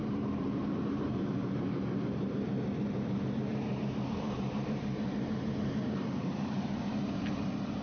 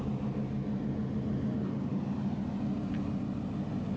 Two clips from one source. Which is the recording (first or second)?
second